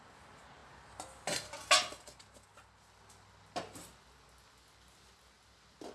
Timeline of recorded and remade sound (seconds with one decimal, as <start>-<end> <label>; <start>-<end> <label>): 0.0-5.9 recorded